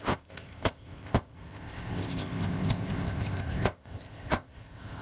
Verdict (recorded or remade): remade